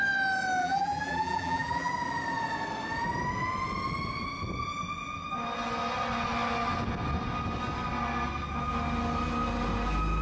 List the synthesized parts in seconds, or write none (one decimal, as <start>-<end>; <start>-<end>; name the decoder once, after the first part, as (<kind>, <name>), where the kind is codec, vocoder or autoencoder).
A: 0.6-1.9 (vocoder, BigVGAN v2)